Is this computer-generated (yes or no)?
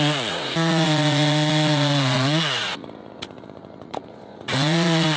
yes